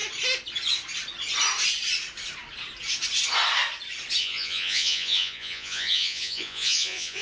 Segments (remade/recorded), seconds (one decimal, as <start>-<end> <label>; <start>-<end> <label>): 0.0-4.2 recorded; 4.2-7.2 remade